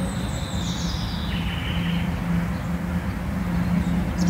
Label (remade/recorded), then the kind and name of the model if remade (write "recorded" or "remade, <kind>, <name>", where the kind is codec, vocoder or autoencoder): recorded